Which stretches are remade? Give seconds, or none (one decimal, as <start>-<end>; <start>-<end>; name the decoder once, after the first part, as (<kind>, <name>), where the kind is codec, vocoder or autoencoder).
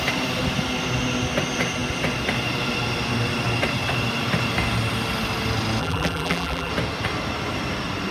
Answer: 5.8-6.7 (vocoder, BigVGAN v2)